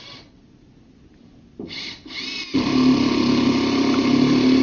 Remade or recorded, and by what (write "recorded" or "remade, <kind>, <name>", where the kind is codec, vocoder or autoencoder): recorded